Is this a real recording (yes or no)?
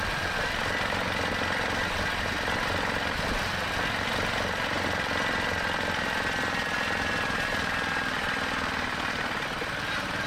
yes